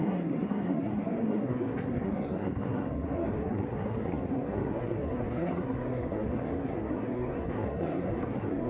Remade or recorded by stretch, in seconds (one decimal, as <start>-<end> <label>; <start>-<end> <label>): 0.0-8.7 remade